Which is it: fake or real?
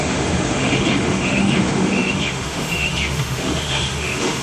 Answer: fake